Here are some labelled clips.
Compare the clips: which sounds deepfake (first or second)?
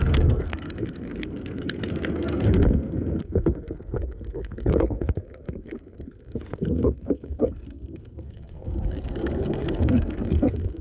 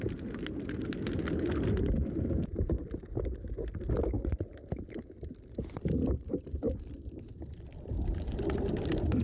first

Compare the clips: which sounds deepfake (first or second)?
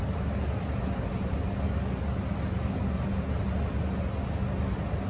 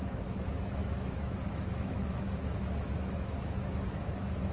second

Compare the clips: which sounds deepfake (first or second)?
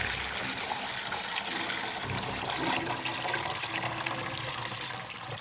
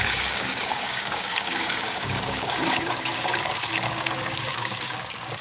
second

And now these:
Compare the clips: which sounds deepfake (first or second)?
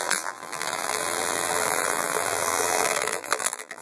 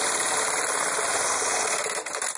first